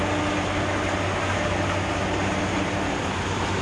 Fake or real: real